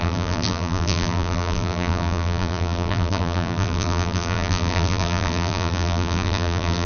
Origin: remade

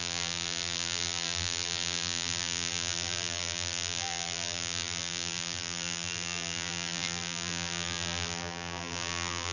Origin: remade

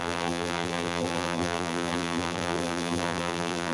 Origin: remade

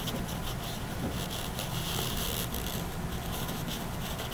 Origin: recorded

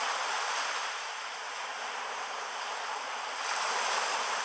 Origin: remade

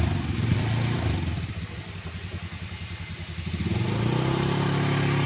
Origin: recorded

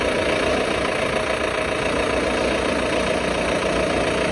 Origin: recorded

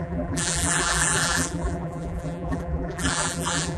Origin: remade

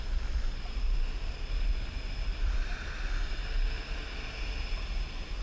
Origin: recorded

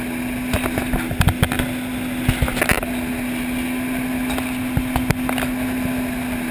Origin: recorded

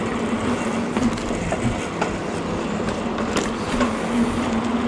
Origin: recorded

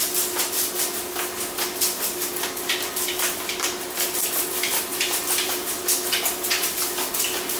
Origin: recorded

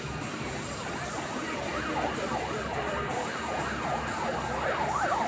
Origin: remade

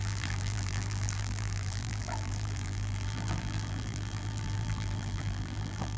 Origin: remade